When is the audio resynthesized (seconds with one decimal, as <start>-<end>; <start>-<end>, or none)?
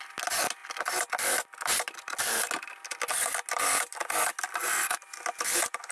none